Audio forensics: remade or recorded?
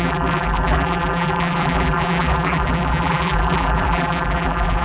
remade